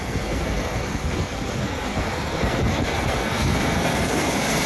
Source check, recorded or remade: remade